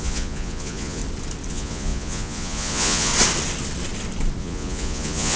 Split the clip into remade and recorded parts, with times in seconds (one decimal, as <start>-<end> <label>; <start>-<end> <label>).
0.0-1.0 remade; 1.0-1.5 recorded; 1.5-3.1 remade; 3.1-4.4 recorded; 4.4-5.4 remade